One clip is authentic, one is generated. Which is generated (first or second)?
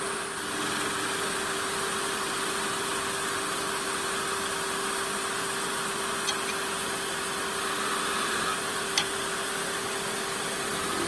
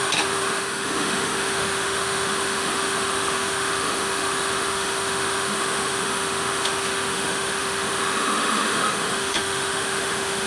second